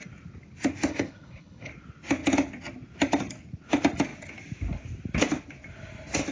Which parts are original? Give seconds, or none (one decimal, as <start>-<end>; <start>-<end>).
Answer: 0.0-0.9; 1.7-6.3